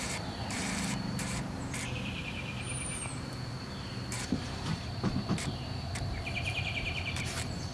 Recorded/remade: remade